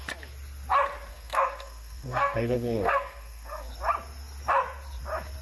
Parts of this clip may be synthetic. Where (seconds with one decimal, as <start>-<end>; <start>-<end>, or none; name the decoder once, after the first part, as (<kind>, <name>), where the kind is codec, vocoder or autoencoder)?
1.1-3.7 (codec, SNAC)